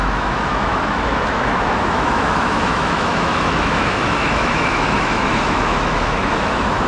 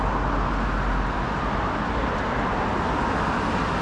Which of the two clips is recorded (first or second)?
second